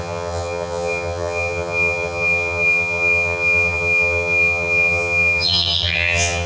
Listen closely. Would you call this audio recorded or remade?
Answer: remade